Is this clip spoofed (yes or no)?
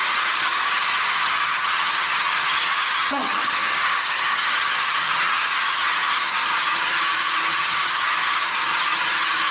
yes